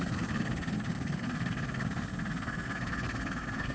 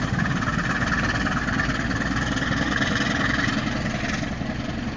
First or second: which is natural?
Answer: second